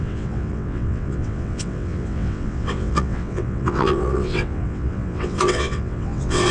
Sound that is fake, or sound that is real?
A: fake